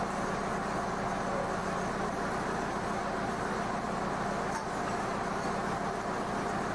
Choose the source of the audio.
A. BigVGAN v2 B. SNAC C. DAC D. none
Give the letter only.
D